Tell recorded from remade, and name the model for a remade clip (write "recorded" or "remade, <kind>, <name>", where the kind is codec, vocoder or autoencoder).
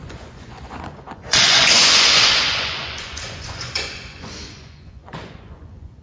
remade, vocoder, Vocos